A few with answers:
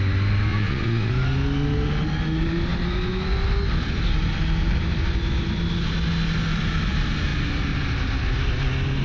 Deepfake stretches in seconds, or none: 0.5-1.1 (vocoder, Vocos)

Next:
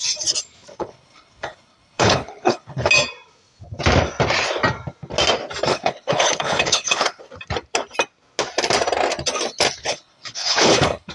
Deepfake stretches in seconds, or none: 0.7-2.9 (codec, HILCodec); 5.7-7.2; 9.8-11.1

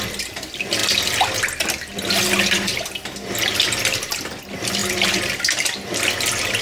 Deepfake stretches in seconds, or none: none